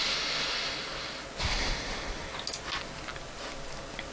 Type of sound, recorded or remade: recorded